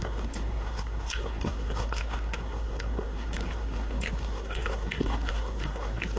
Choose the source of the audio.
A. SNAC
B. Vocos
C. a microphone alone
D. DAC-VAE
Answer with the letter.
A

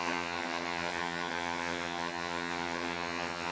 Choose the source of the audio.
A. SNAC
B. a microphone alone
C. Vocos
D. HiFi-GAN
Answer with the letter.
D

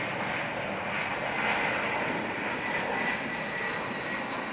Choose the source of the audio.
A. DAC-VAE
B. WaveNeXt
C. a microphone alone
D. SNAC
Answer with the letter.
C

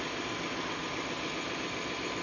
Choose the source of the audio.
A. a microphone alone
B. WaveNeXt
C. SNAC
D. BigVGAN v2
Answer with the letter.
A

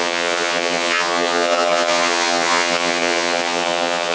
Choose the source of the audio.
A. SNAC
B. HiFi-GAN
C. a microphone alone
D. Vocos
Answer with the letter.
B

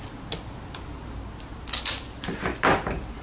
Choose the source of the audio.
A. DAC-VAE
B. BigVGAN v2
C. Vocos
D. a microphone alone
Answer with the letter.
D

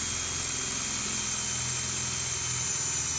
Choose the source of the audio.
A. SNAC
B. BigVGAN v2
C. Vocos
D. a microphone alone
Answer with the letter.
D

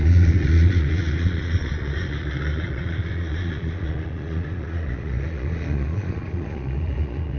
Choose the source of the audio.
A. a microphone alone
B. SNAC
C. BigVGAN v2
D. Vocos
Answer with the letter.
D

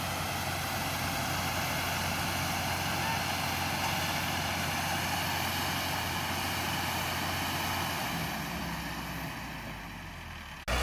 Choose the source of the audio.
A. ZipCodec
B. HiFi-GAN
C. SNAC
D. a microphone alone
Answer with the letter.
D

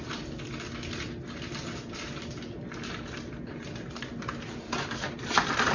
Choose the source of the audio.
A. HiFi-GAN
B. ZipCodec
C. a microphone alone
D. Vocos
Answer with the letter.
C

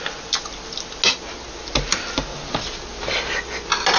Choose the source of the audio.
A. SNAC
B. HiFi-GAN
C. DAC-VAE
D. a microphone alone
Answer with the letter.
D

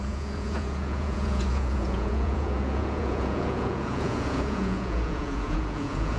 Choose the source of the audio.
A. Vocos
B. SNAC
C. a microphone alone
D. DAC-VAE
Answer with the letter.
A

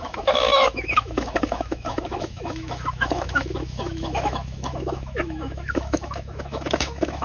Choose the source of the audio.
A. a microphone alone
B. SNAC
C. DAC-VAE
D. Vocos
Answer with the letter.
C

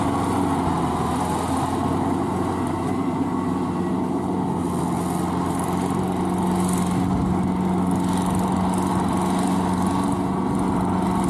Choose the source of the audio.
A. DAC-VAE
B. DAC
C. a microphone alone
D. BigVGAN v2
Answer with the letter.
C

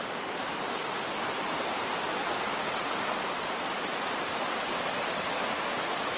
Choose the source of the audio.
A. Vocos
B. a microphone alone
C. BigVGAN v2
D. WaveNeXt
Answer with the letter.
B